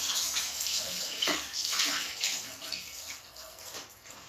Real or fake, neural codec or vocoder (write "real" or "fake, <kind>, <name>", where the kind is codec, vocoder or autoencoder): fake, codec, SNAC